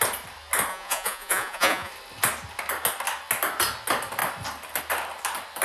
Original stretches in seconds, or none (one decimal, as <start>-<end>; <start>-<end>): 0.0-0.7; 1.9-5.6